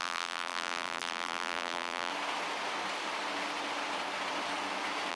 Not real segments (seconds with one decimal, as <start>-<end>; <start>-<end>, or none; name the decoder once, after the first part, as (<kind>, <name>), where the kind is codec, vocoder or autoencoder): 0.0-2.1 (vocoder, BigVGAN v2)